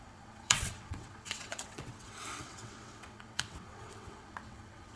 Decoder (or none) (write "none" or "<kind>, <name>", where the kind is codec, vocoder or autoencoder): vocoder, WaveNeXt